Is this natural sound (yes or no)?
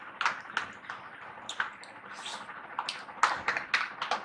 yes